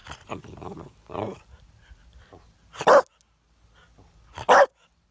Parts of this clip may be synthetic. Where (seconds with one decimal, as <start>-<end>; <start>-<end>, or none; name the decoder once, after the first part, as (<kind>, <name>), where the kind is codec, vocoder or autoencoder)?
none